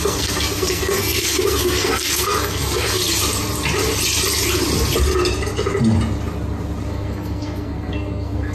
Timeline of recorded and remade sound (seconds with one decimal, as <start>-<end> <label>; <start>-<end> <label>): 0.0-3.0 remade; 3.0-6.9 recorded; 6.9-8.5 remade